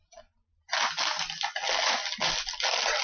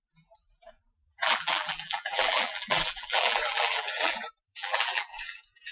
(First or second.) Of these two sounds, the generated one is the second